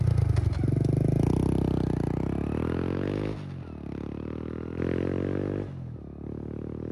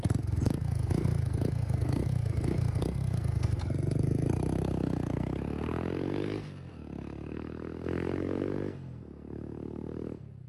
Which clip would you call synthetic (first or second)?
second